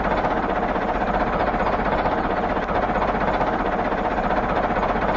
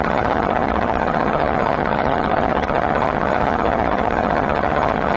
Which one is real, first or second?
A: first